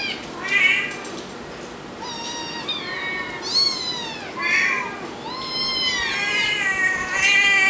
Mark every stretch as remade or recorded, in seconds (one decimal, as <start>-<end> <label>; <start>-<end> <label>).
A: 0.0-7.7 recorded